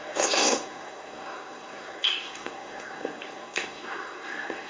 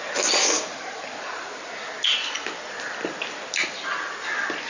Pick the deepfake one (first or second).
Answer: first